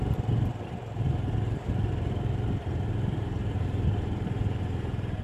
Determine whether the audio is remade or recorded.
remade